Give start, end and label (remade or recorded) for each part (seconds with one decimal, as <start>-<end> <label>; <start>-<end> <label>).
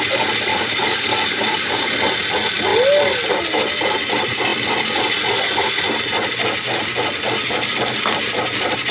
0.0-0.5 recorded; 0.5-1.9 remade; 1.9-8.9 recorded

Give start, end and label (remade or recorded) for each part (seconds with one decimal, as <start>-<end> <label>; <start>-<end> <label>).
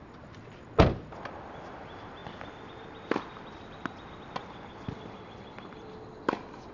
0.0-6.7 recorded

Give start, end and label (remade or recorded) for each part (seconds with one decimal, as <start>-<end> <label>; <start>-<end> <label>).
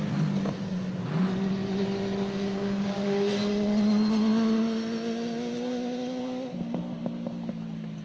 0.0-2.5 recorded; 2.5-3.3 remade; 3.3-8.0 recorded